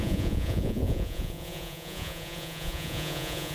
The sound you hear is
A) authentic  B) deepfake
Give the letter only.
B